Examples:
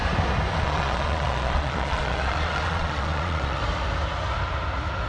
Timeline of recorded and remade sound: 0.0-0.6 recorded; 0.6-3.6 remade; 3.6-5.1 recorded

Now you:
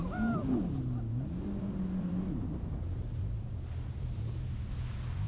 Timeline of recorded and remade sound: 0.0-5.3 recorded

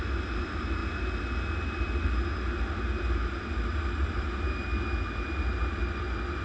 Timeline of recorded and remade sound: 0.0-6.4 recorded

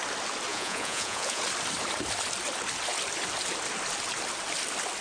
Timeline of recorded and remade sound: 0.0-0.5 recorded; 0.5-1.4 remade; 1.4-5.0 recorded

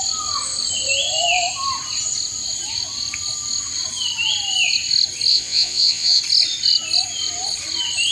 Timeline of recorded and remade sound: 0.0-5.3 recorded; 5.3-6.2 remade; 6.2-8.1 recorded

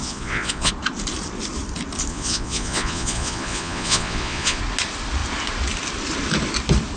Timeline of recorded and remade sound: 0.0-0.7 remade; 0.7-2.1 recorded; 2.1-4.6 remade; 4.6-7.0 recorded

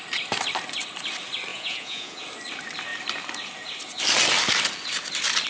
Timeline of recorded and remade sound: 0.0-1.5 recorded; 1.5-2.2 remade; 2.2-5.5 recorded